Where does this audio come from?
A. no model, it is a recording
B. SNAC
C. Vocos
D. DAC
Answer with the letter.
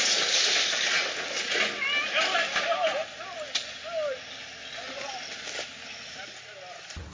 A